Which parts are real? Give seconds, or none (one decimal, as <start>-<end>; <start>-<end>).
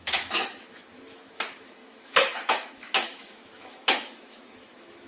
none